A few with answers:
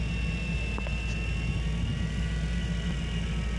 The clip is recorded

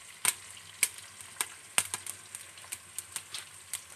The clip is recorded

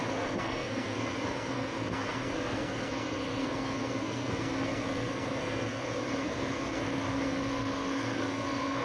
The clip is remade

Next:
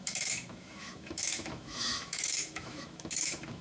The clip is remade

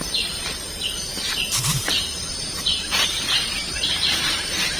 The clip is remade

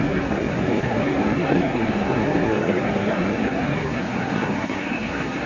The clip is remade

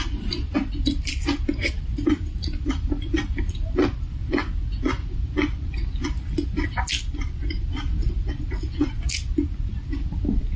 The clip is recorded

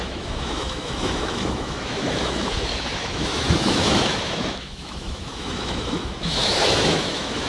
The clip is remade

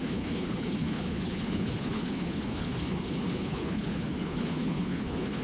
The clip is remade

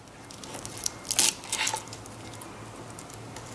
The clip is recorded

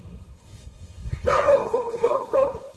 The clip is remade